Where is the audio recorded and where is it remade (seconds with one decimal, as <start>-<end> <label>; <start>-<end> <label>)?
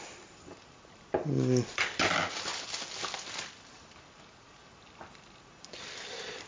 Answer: 0.0-6.5 recorded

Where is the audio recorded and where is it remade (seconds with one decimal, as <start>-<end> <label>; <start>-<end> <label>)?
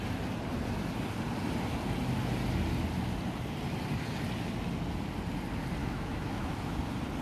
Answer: 0.0-5.8 recorded; 5.8-6.8 remade; 6.8-7.2 recorded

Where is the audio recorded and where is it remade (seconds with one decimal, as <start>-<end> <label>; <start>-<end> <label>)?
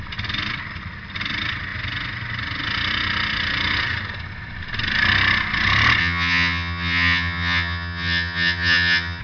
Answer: 0.0-6.0 recorded; 6.0-9.2 remade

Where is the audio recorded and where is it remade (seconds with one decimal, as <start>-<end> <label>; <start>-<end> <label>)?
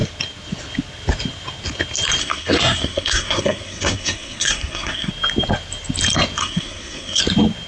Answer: 0.0-2.2 recorded; 2.2-5.1 remade; 5.1-6.4 recorded; 6.4-7.2 remade; 7.2-7.7 recorded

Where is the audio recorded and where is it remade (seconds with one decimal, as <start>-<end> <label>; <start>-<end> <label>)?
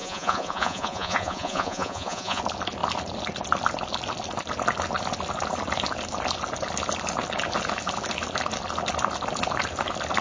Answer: 0.0-2.4 remade; 2.4-10.2 recorded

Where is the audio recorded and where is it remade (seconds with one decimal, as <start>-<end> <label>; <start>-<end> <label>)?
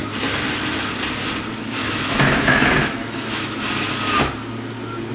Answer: 0.0-1.8 recorded; 1.8-3.9 remade; 3.9-5.1 recorded